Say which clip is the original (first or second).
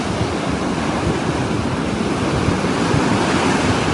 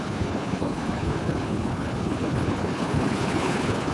first